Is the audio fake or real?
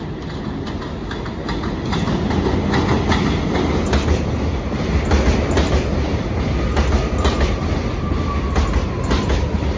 real